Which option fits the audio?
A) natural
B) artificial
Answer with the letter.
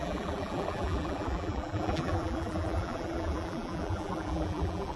B